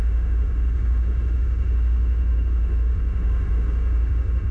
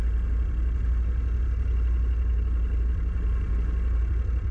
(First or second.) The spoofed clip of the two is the first